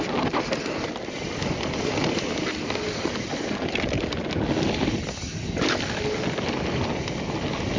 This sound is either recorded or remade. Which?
recorded